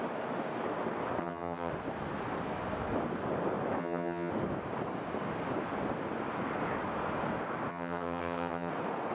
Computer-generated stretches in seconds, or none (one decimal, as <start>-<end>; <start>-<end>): 1.2-1.7; 3.8-4.3; 7.7-8.7